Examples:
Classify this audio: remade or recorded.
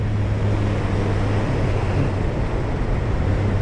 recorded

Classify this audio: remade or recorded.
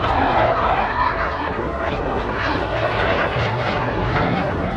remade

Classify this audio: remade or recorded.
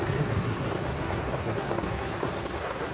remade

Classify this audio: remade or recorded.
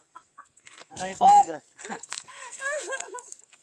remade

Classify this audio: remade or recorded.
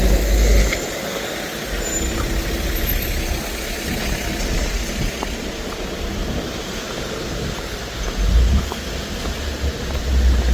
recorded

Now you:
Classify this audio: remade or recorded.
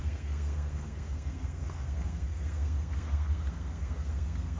remade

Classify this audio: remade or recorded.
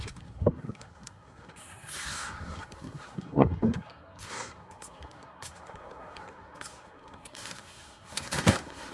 remade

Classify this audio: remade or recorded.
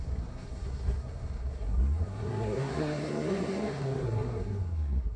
remade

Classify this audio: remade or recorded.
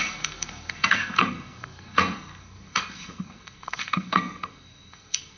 remade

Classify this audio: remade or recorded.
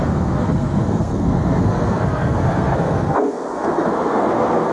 remade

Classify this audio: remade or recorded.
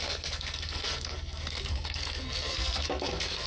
remade